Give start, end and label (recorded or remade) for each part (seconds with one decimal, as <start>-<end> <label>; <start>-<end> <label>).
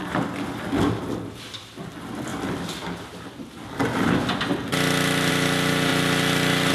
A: 0.0-6.7 recorded